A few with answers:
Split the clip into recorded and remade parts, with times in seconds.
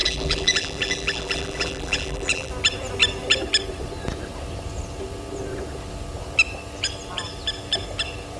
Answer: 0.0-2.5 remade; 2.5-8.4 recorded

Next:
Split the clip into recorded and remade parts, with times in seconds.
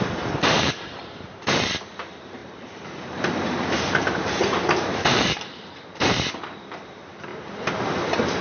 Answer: 0.0-8.4 remade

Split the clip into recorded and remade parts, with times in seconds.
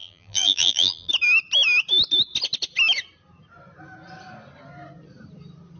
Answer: 0.0-1.1 remade; 1.1-5.8 recorded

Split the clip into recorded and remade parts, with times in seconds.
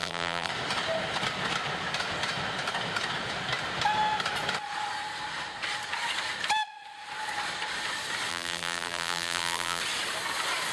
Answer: 0.0-0.5 remade; 0.5-8.3 recorded; 8.3-9.8 remade; 9.8-10.7 recorded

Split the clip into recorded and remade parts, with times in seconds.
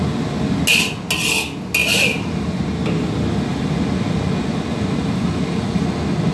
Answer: 0.0-1.8 recorded; 1.8-2.6 remade; 2.6-3.5 recorded; 3.5-5.8 remade; 5.8-6.3 recorded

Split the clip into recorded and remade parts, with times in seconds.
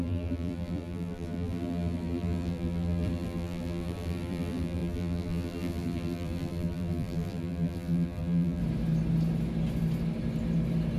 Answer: 0.0-8.6 remade; 8.6-11.0 recorded